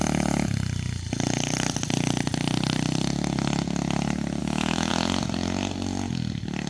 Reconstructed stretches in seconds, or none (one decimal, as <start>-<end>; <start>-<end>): 4.4-4.9